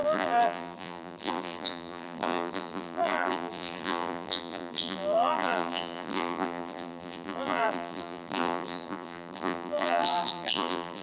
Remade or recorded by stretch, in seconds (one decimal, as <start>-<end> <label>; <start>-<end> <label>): 0.0-11.0 remade